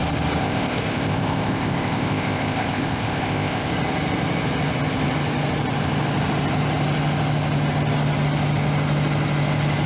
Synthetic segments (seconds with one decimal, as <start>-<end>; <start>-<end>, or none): 0.4-3.7